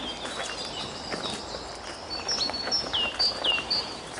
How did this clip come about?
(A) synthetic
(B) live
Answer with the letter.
B